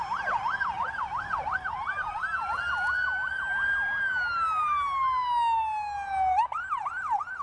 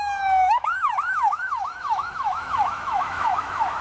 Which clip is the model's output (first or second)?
second